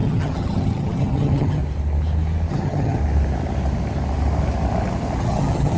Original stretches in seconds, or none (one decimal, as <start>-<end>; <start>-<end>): 1.6-2.5; 3.0-5.2